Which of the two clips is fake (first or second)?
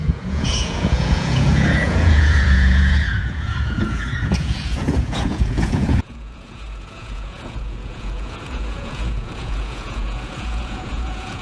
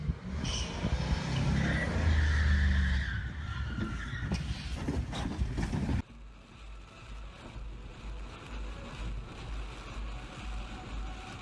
first